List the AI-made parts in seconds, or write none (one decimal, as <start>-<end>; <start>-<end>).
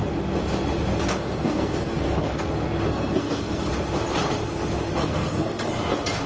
1.1-2.5; 2.9-3.7; 5.0-5.7